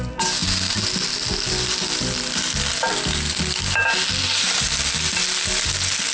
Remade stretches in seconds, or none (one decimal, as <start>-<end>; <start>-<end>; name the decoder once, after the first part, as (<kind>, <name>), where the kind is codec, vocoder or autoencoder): none